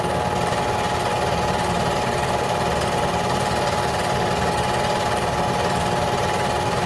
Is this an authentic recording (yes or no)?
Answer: no